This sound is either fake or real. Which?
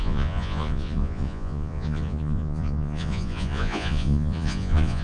fake